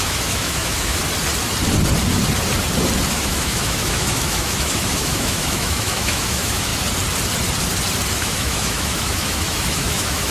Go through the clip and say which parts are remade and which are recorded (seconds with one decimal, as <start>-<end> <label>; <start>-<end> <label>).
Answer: 0.0-1.0 remade; 1.0-3.1 recorded; 3.1-6.7 remade; 6.7-8.1 recorded; 8.1-10.3 remade